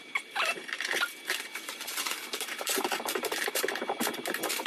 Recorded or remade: remade